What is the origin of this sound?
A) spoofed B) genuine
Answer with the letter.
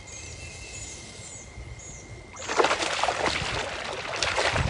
B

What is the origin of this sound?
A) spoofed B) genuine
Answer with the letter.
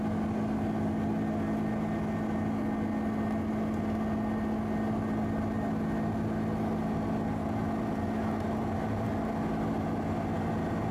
B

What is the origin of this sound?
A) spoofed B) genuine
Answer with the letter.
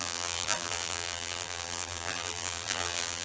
A